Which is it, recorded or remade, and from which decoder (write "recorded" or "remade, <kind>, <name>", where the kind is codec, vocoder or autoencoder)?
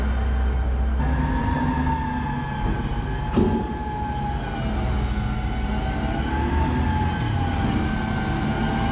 recorded